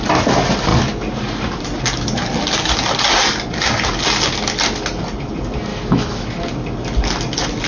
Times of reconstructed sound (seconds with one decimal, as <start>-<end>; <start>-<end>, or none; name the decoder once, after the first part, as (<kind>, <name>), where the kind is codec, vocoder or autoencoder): 5.7-6.4 (autoencoder, DAC-VAE)